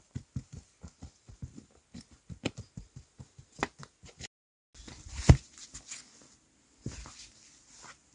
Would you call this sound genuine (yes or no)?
yes